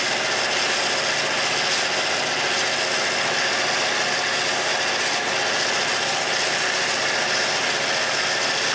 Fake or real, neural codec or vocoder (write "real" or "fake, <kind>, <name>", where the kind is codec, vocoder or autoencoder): real